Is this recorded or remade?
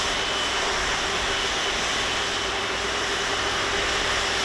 recorded